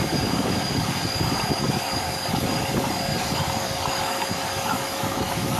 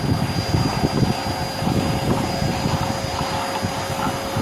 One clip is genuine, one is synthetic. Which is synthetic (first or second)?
first